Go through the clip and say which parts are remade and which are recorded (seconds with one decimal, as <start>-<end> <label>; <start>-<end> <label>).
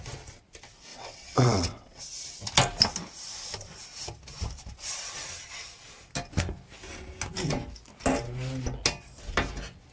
0.0-0.9 recorded; 0.9-2.0 remade; 2.0-9.9 recorded